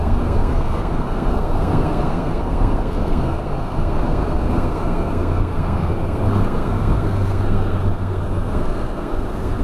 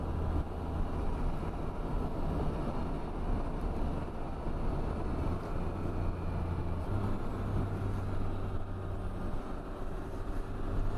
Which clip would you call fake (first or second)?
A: first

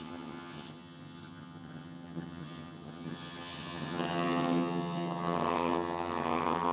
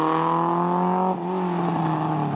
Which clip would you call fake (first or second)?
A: first